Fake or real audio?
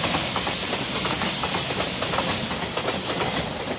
real